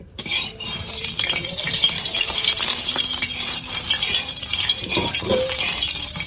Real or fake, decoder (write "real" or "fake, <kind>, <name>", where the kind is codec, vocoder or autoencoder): fake, vocoder, BigVGAN v2